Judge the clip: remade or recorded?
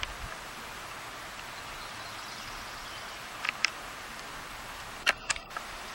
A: recorded